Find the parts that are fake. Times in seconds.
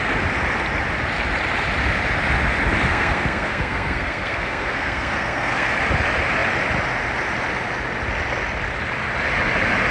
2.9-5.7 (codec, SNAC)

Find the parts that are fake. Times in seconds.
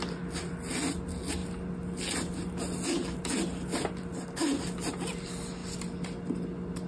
none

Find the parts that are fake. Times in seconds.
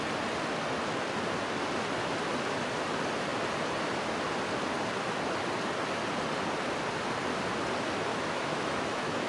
8.1-9.3 (autoencoder, DAC-VAE)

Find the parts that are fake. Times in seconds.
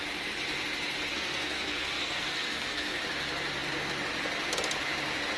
1.1-3.0 (codec, SNAC)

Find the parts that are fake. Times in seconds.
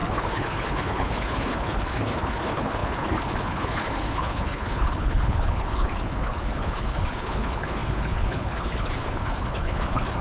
0.0-10.2 (codec, HILCodec)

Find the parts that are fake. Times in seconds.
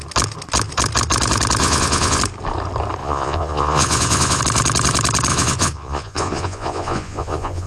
1.6-2.2 (vocoder, Vocos); 3.0-4.4; 5.3-7.7